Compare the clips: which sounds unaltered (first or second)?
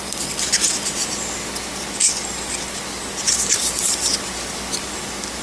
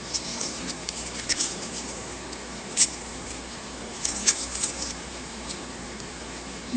first